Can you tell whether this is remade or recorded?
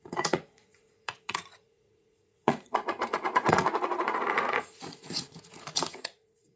remade